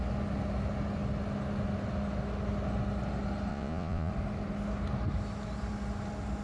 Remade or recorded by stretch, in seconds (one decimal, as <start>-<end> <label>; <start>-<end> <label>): 0.0-3.5 recorded; 3.5-4.1 remade; 4.1-6.4 recorded